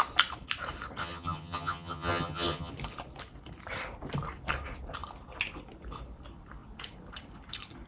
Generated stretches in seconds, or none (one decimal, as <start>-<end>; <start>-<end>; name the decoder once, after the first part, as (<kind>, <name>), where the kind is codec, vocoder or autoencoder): 1.0-2.7 (vocoder, HiFi-GAN)